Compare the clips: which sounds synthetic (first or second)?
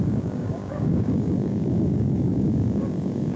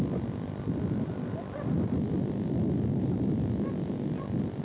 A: first